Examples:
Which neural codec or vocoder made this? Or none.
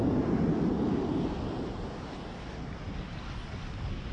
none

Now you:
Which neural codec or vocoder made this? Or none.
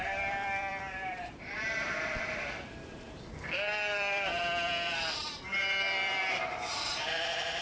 vocoder, BigVGAN v2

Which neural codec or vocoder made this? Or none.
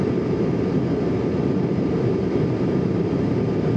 vocoder, BigVGAN v2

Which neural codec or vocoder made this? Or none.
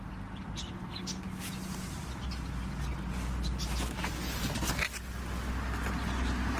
none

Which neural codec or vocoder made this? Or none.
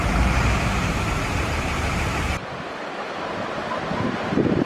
vocoder, BigVGAN v2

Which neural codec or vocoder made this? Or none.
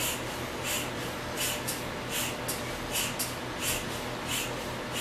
none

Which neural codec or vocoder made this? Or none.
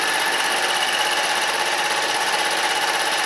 none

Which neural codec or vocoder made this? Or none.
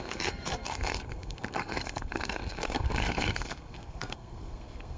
codec, SNAC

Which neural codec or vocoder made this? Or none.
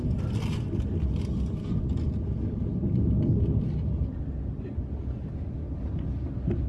none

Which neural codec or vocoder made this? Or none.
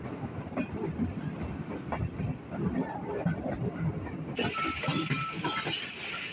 none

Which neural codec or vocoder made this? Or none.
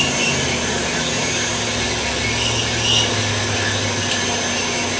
none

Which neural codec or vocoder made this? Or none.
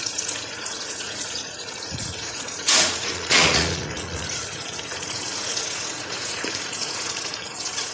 vocoder, Vocos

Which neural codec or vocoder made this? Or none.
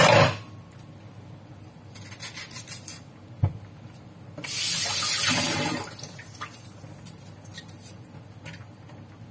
none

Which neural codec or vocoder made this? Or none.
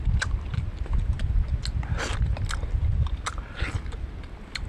none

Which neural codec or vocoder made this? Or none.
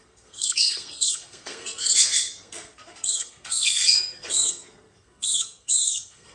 codec, SNAC